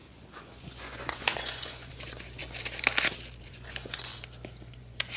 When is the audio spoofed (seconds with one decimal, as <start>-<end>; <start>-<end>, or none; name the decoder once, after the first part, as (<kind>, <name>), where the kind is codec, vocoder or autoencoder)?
0.0-2.4 (vocoder, Vocos); 3.4-4.1; 4.7-5.2